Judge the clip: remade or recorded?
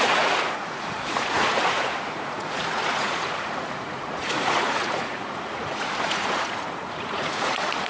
remade